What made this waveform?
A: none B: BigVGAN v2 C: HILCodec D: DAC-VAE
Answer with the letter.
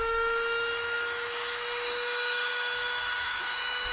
D